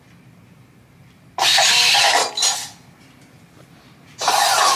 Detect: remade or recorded recorded